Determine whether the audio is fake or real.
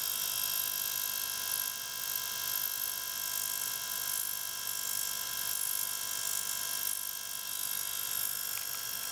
real